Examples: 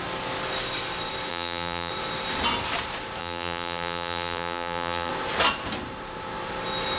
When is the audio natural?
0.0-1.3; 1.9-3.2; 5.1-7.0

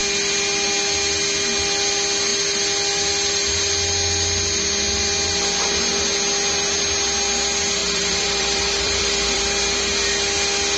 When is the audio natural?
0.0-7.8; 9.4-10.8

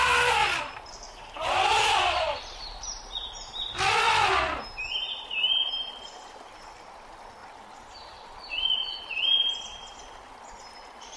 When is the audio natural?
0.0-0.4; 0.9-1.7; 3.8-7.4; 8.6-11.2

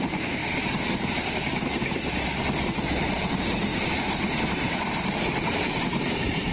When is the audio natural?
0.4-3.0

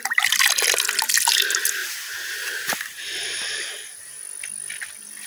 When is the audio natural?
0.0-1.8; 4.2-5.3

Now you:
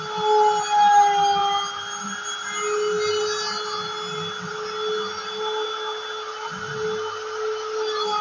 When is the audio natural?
0.0-8.2